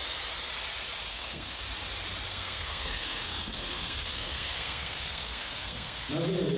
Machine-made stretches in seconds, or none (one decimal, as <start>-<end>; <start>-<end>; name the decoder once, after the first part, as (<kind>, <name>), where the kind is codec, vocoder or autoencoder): 1.1-1.6 (codec, SNAC); 2.3-6.1